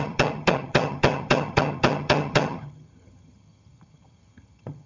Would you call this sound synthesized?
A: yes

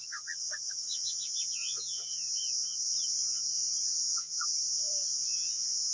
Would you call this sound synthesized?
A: yes